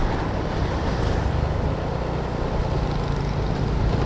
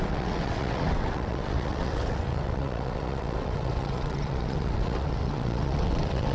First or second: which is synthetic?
second